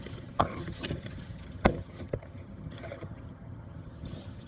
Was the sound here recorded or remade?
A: remade